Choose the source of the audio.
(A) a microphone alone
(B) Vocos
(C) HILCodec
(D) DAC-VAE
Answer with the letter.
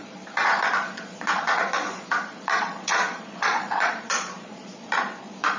B